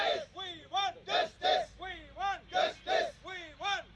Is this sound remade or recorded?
recorded